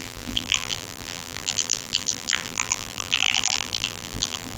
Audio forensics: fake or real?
fake